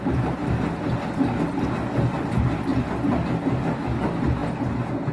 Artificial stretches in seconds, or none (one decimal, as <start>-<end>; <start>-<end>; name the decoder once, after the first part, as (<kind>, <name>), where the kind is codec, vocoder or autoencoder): none